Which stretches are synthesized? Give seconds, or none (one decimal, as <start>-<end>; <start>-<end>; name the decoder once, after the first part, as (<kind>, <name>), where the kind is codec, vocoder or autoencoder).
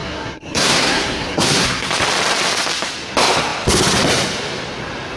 0.0-1.9 (codec, SNAC)